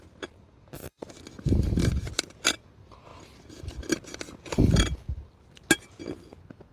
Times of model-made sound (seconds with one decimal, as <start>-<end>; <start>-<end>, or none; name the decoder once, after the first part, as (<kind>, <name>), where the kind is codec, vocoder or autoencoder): 1.8-2.6 (vocoder, BigVGAN v2)